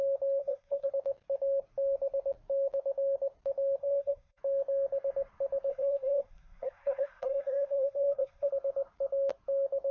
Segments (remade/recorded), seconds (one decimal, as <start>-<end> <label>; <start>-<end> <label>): 0.0-0.4 recorded; 0.4-0.9 remade; 0.9-3.8 recorded; 3.8-4.4 remade; 4.4-5.7 recorded; 5.7-8.5 remade; 8.5-9.9 recorded